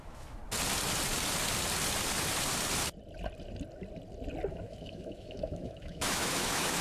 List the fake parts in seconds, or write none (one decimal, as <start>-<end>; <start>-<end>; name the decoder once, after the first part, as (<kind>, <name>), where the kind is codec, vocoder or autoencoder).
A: 0.0-0.4 (autoencoder, DAC-VAE); 4.5-6.8